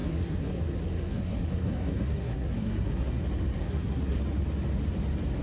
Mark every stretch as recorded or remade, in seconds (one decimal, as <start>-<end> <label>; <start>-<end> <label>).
0.0-3.2 remade; 3.2-3.6 recorded; 3.6-4.2 remade; 4.2-5.4 recorded